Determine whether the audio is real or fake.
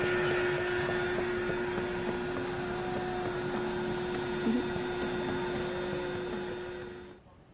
real